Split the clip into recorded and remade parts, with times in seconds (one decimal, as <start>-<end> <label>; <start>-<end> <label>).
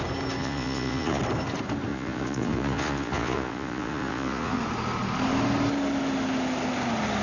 0.0-0.4 recorded; 0.4-1.2 remade; 1.2-1.9 recorded; 1.9-4.6 remade; 4.6-7.2 recorded